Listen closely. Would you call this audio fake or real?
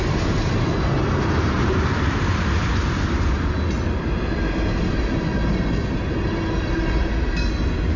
real